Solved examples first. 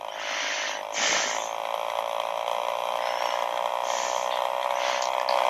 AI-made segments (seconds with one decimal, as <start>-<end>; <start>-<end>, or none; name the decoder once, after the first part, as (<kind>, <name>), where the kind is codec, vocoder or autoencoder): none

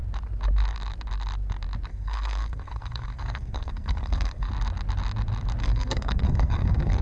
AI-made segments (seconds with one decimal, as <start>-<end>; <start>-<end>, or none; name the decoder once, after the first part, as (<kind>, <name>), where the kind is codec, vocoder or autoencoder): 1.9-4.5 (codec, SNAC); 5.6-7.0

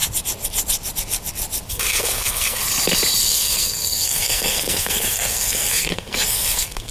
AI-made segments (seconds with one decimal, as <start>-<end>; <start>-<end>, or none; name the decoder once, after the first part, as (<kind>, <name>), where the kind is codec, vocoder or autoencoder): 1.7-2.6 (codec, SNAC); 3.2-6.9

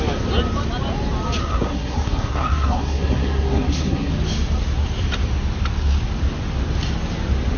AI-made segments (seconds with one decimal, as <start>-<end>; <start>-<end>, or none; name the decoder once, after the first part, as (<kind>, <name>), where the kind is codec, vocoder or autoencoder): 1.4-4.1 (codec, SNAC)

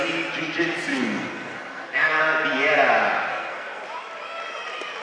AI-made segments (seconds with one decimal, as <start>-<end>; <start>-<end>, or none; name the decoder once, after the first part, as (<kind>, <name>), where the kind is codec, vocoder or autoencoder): 0.9-2.2 (codec, SNAC); 3.3-3.8

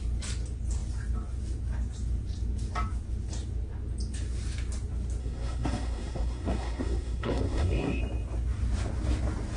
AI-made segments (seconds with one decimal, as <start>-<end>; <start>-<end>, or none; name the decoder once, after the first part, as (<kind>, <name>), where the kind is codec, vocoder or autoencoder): 5.2-8.0 (codec, SNAC)

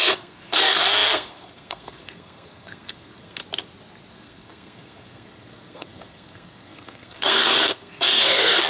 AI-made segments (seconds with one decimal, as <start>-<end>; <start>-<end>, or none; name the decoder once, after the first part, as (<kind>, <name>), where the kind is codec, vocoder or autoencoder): 0.0-3.4 (codec, SNAC); 4.1-8.7